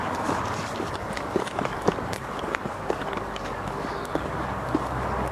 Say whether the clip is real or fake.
fake